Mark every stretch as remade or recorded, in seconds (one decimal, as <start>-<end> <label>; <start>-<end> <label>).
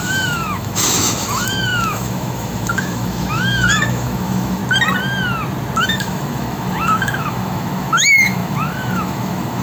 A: 0.0-4.6 remade; 4.6-5.8 recorded; 5.8-9.6 remade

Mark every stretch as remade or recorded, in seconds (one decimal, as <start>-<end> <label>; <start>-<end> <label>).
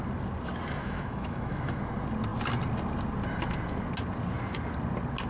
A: 0.0-0.8 recorded; 0.8-1.8 remade; 1.8-5.3 recorded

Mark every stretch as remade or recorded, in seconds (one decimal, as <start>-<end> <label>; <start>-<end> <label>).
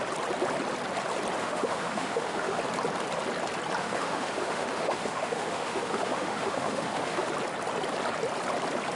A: 0.0-1.4 recorded; 1.4-2.6 remade; 2.6-3.8 recorded; 3.8-7.3 remade; 7.3-9.0 recorded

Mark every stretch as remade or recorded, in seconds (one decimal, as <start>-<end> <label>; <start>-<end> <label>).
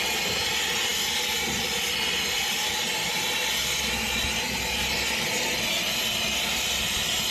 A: 0.0-7.3 recorded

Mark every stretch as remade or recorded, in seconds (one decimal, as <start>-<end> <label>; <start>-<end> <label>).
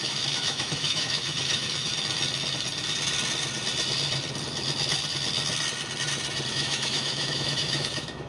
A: 0.0-1.9 remade; 1.9-6.5 recorded; 6.5-8.3 remade